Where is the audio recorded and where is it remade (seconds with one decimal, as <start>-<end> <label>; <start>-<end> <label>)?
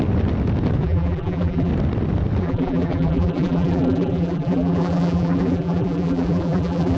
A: 0.0-0.8 recorded; 0.8-1.7 remade; 1.7-2.4 recorded; 2.4-7.0 remade